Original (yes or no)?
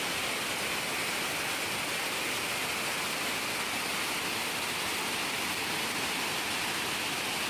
yes